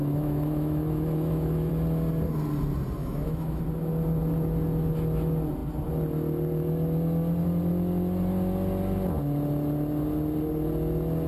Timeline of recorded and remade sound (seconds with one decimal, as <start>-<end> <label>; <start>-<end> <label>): 0.0-1.7 remade; 1.7-3.0 recorded; 3.0-3.6 remade; 3.6-11.3 recorded